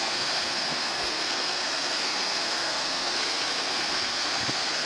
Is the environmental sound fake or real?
fake